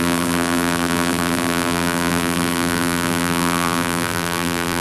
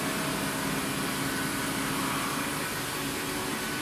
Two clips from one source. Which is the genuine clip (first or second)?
second